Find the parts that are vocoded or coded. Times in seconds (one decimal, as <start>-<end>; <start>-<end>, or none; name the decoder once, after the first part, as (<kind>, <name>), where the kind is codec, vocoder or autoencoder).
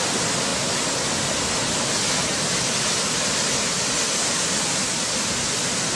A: none